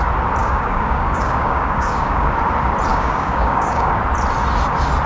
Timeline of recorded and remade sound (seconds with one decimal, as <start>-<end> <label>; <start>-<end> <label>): 0.0-0.4 recorded; 0.4-2.3 remade; 2.3-2.9 recorded; 2.9-4.0 remade; 4.0-5.1 recorded

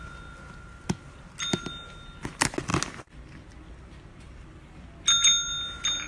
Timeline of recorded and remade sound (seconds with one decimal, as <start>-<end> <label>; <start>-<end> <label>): 0.0-6.1 recorded

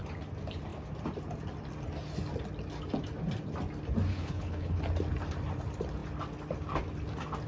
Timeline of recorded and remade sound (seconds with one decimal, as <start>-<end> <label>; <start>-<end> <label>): 0.0-4.1 recorded; 4.1-4.8 remade; 4.8-7.5 recorded